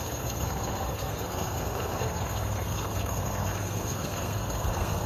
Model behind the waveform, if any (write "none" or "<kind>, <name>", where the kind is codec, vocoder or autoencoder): codec, SNAC